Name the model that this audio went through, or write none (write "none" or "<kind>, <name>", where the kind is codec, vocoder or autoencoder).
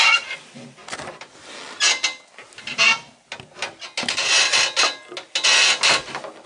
none